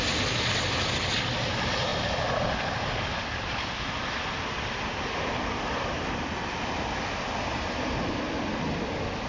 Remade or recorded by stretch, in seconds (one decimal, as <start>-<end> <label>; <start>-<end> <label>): 0.0-9.3 recorded